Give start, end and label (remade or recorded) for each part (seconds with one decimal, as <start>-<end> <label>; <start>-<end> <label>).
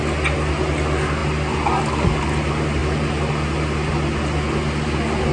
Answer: 0.0-5.3 recorded